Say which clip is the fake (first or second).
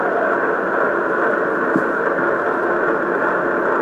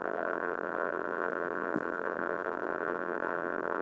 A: second